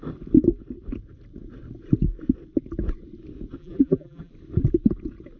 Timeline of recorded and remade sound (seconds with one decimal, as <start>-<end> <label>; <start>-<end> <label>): 0.0-3.6 recorded; 3.6-4.3 remade; 4.3-5.4 recorded